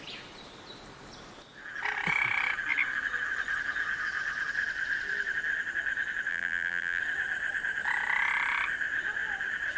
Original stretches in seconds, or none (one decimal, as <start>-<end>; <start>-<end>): 0.0-6.3; 7.0-9.8